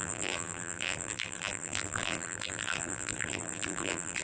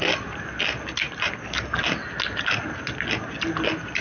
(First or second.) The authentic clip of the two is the second